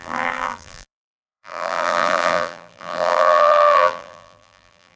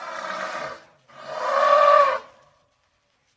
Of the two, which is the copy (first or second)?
first